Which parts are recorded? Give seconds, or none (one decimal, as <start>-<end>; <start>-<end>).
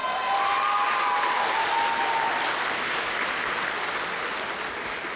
0.0-5.2